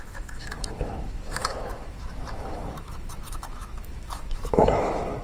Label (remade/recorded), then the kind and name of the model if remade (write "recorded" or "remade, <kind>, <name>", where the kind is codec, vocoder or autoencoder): remade, autoencoder, DAC-VAE